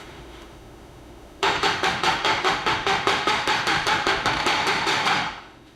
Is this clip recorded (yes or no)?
no